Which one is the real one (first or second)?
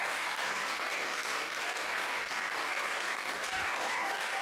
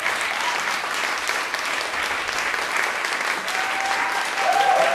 second